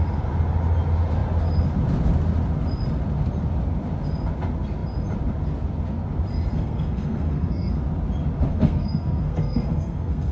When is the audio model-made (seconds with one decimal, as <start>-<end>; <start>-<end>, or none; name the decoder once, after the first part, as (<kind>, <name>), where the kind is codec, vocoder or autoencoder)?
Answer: 6.5-7.8 (codec, SNAC); 8.5-10.3